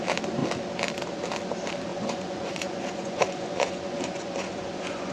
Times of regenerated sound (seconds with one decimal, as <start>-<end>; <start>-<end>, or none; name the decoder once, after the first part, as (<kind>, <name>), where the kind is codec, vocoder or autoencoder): 1.9-5.1 (vocoder, Vocos)